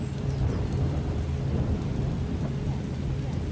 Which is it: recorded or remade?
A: recorded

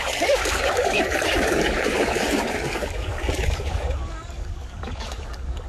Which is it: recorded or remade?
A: remade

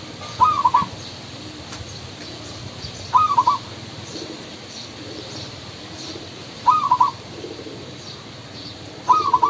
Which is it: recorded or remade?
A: remade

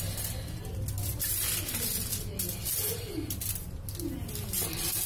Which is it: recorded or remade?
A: recorded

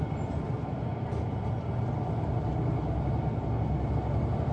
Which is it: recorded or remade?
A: recorded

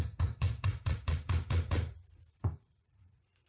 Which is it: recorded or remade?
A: remade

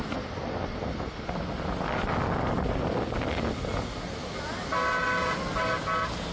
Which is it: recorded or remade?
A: recorded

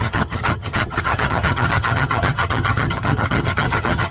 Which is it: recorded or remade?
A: remade